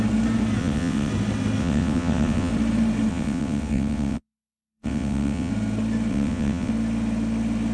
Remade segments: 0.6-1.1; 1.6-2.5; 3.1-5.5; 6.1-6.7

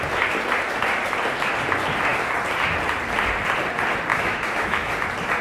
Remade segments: 4.1-4.9

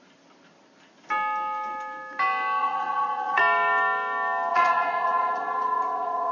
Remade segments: 2.6-3.4; 4.5-6.3

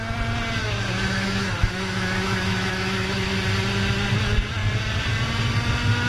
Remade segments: 0.6-3.3